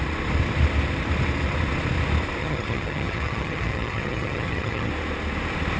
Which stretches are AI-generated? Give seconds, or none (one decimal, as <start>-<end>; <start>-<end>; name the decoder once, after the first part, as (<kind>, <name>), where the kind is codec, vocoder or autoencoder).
2.4-4.9 (vocoder, HiFi-GAN)